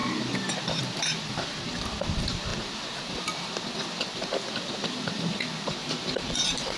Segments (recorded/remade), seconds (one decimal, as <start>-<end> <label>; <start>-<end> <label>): 0.0-5.8 recorded; 5.8-6.8 remade